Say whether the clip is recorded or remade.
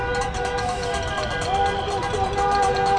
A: recorded